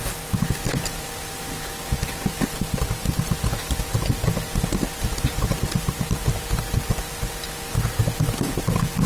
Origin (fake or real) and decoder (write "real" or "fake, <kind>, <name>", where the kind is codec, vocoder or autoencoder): real